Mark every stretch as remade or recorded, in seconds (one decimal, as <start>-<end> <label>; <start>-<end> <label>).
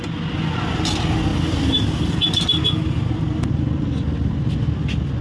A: 0.0-5.2 recorded